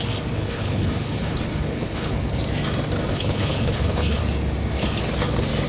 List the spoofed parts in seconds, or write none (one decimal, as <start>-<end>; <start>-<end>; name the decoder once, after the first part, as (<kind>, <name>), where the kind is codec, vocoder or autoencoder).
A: 0.4-2.4 (codec, HILCodec); 3.1-4.2